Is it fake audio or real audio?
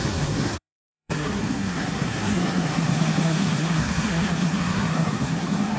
fake